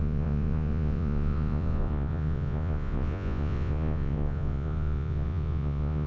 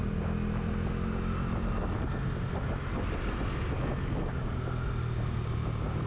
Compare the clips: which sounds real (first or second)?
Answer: second